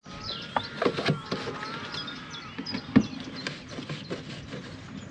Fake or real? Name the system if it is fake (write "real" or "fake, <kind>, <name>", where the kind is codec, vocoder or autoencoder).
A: real